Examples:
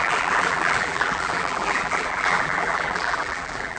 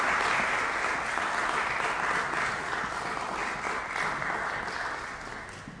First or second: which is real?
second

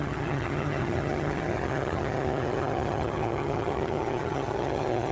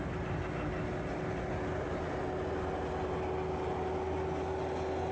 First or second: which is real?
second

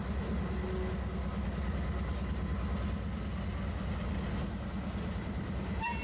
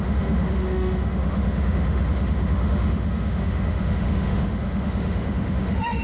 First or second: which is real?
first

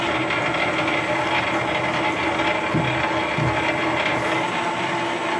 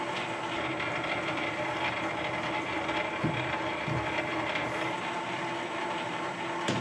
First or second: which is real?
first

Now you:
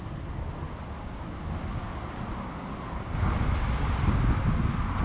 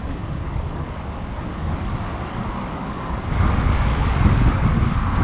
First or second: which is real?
first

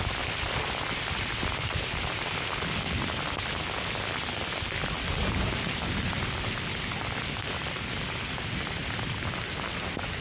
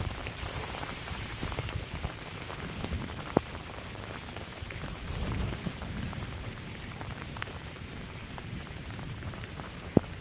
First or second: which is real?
first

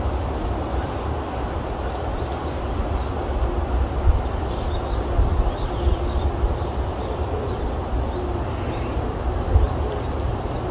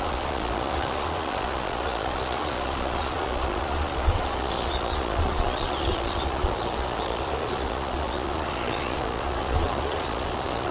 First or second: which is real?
first